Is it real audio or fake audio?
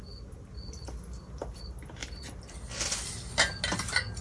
real